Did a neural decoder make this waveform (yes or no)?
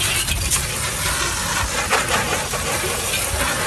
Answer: no